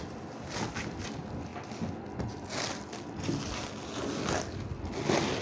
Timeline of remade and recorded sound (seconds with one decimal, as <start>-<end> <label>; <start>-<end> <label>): 0.0-5.4 recorded